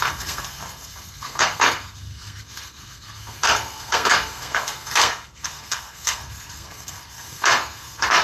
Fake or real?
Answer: fake